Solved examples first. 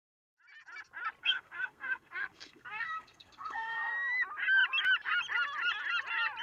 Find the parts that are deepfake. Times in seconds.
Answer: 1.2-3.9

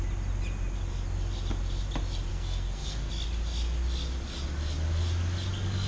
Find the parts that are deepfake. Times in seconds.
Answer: 2.3-3.1

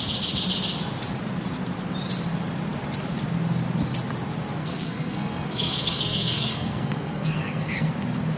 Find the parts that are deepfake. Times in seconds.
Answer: 4.6-7.9

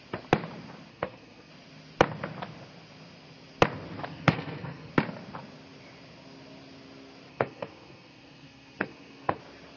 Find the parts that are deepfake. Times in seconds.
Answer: 0.9-1.5; 4.1-4.9; 7.3-9.4